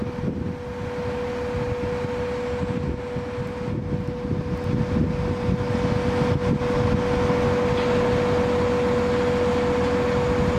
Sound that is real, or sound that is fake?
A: real